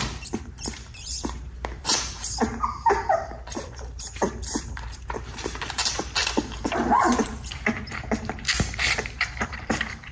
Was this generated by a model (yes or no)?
yes